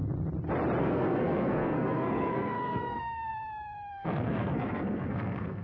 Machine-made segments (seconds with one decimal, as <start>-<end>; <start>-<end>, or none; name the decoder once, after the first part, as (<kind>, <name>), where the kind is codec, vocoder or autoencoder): 0.8-3.3 (codec, SNAC); 3.9-5.6